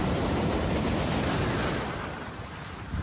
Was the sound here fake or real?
real